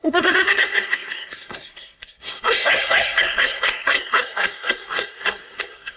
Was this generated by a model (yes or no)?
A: yes